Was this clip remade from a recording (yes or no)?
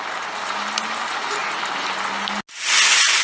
no